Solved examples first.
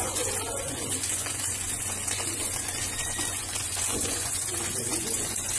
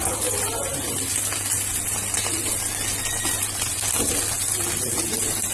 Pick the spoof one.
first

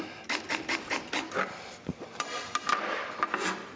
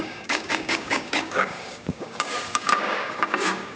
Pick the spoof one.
second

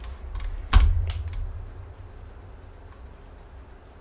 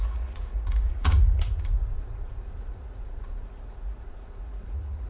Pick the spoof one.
second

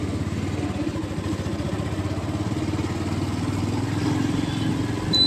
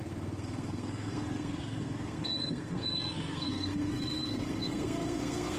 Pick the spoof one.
second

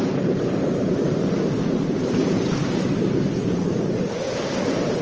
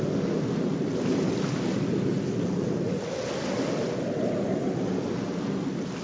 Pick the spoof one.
first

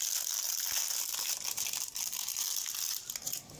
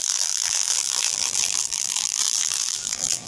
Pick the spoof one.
second